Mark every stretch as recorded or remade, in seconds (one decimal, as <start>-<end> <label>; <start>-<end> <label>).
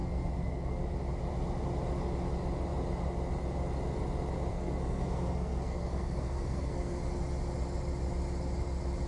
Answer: 0.0-0.8 remade; 0.8-4.5 recorded; 4.5-7.0 remade; 7.0-9.1 recorded